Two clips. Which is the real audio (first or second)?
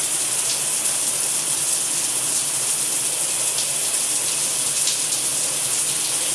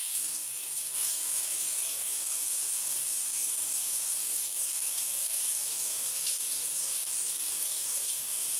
first